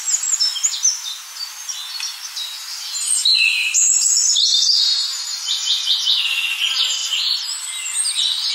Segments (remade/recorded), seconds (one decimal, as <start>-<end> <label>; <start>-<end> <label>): 0.0-8.5 recorded

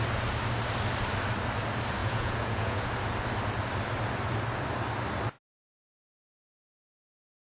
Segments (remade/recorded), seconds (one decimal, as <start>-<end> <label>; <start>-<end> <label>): 0.0-2.0 recorded; 2.0-2.9 remade; 2.9-7.4 recorded

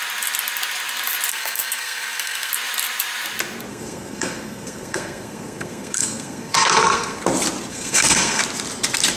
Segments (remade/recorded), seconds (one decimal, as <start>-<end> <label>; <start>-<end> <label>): 0.0-1.3 recorded; 1.3-2.5 remade; 2.5-3.7 recorded; 3.7-7.2 remade; 7.2-7.7 recorded; 7.7-8.4 remade; 8.4-9.2 recorded

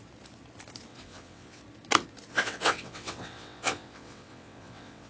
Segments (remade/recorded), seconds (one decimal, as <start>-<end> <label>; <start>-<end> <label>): 0.0-0.9 recorded; 0.9-1.6 remade; 1.6-2.3 recorded; 2.3-5.1 remade

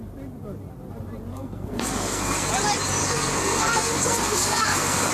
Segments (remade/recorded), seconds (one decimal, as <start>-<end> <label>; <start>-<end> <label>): 0.0-1.3 recorded; 1.3-2.5 remade; 2.5-3.0 recorded; 3.0-5.1 remade

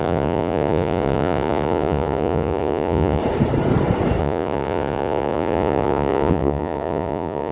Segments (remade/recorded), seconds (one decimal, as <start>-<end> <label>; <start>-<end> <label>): 0.0-3.2 remade; 3.2-4.2 recorded; 4.2-7.5 remade

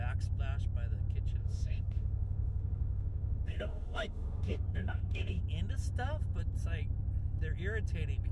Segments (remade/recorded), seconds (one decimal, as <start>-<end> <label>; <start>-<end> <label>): 0.0-1.4 recorded; 1.4-5.4 remade; 5.4-8.3 recorded

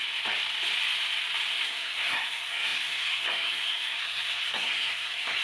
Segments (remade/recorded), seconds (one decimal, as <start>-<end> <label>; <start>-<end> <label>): 0.0-1.5 recorded; 1.5-5.4 remade